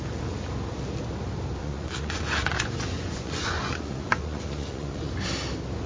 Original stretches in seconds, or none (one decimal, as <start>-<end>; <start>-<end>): 0.0-1.6; 5.1-5.9